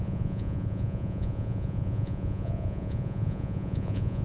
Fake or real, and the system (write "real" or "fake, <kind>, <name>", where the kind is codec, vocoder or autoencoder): fake, vocoder, Vocos